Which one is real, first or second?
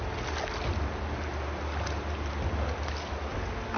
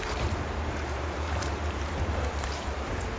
first